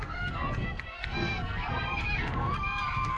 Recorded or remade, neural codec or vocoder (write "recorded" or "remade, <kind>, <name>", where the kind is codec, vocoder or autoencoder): remade, codec, SNAC